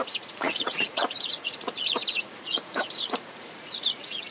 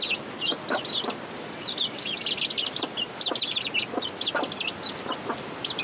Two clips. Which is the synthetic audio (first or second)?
first